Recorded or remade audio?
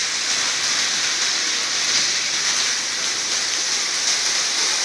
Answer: recorded